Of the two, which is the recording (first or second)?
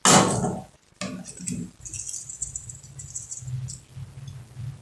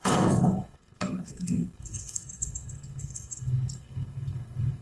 first